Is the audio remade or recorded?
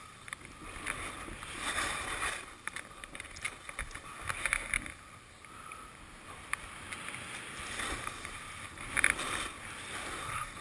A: recorded